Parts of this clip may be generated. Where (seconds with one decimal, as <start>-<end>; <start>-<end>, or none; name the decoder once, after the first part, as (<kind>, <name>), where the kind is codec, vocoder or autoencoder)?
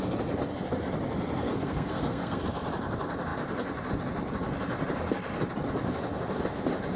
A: 1.5-2.4 (codec, SNAC)